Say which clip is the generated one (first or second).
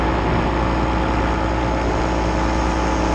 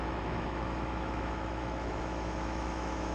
second